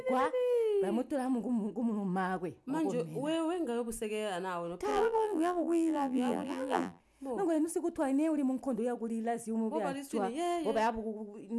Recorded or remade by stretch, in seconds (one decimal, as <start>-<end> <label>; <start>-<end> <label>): 0.0-4.9 recorded; 4.9-7.0 remade; 7.0-11.6 recorded